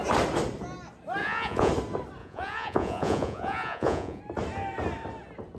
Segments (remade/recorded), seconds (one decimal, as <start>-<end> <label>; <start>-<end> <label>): 0.0-1.2 recorded; 1.2-1.7 remade; 1.7-2.2 recorded; 2.2-4.2 remade; 4.2-5.6 recorded